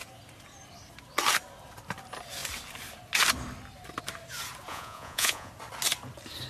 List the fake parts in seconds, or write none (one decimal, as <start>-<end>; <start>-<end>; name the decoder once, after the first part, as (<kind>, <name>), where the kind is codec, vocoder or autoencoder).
4.7-5.5 (vocoder, Vocos)